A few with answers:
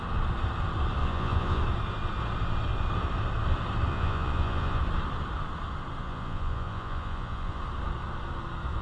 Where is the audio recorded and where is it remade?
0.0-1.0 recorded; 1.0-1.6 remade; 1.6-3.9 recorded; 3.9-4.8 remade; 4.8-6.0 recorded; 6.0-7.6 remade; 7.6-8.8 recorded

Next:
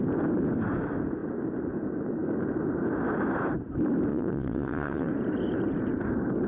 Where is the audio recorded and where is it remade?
0.0-4.1 recorded; 4.1-5.1 remade; 5.1-6.5 recorded